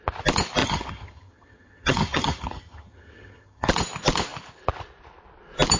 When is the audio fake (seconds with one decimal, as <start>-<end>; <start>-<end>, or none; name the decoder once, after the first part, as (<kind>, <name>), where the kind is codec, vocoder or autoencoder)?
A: 0.6-3.7 (vocoder, HiFi-GAN)